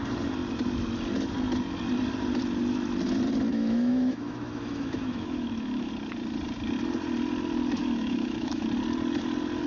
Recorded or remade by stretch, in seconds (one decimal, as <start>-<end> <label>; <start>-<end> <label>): 0.0-3.5 recorded; 3.5-5.9 remade; 5.9-7.8 recorded; 7.8-8.7 remade; 8.7-9.7 recorded